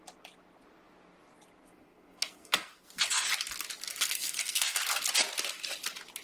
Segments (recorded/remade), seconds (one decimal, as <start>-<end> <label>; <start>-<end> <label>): 0.0-1.6 recorded; 1.6-3.3 remade; 3.3-3.9 recorded; 3.9-4.9 remade; 4.9-6.2 recorded